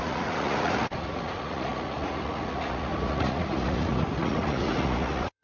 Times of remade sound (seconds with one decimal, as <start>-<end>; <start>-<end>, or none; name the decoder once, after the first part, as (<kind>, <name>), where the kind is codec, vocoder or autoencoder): 0.0-5.4 (vocoder, Vocos)